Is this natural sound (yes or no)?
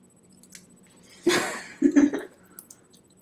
yes